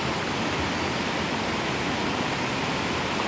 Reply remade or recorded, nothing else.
recorded